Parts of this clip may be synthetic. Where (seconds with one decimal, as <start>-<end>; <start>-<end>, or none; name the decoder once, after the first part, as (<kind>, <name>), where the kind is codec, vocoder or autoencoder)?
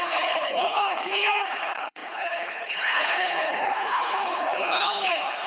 0.0-5.5 (codec, HILCodec)